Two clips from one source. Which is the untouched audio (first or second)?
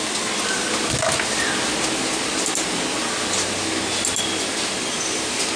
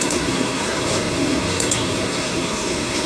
first